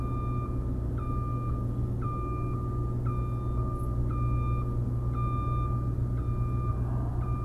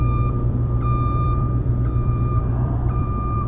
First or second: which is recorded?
first